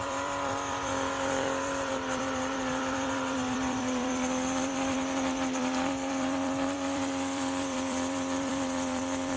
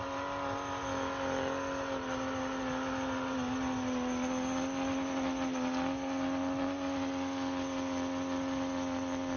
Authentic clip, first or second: second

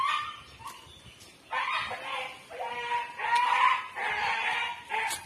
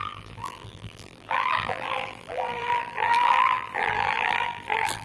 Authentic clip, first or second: first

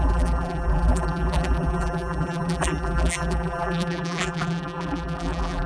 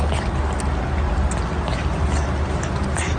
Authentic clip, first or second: second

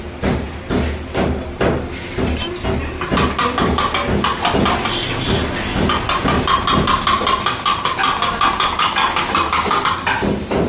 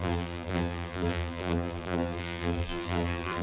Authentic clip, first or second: first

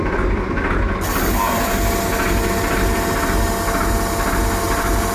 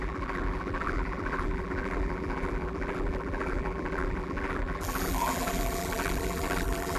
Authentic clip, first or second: first